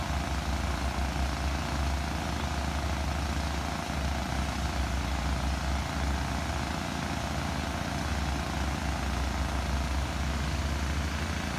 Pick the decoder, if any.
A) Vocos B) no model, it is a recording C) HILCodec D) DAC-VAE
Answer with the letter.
B